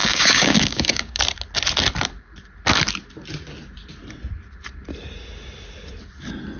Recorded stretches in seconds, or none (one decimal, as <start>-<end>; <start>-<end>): 1.2-6.6